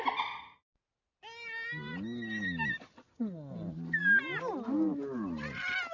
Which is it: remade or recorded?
recorded